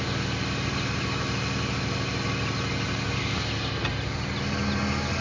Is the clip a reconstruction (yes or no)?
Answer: no